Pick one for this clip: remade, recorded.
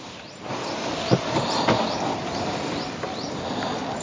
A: recorded